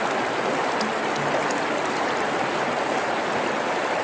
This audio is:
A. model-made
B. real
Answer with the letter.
B